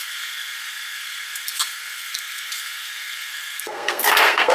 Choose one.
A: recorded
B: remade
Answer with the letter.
B